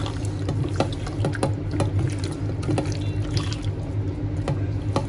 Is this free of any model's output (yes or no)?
yes